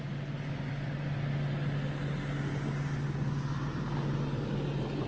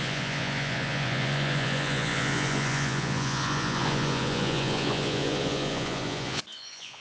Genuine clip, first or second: first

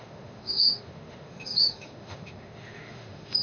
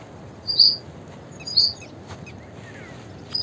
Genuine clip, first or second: second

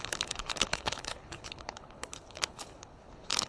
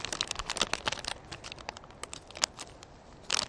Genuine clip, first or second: second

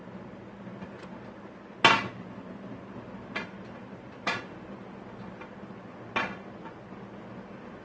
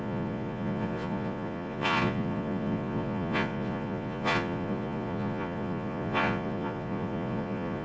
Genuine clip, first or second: first